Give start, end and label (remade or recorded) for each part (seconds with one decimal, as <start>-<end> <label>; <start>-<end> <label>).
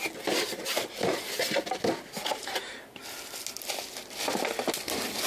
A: 0.0-2.2 recorded; 2.2-3.0 remade; 3.0-5.3 recorded